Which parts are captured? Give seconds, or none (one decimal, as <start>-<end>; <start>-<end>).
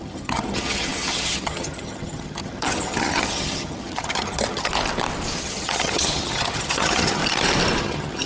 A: 4.7-5.4; 7.2-7.8